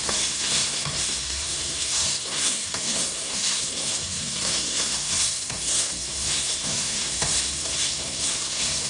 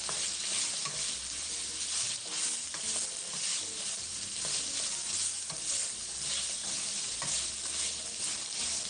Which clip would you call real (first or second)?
second